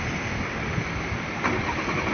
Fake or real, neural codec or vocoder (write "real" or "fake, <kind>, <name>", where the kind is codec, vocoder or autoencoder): real